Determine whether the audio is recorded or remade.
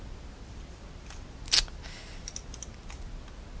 recorded